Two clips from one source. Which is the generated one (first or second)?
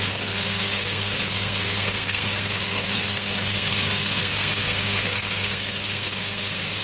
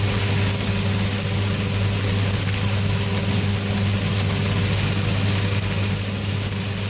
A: first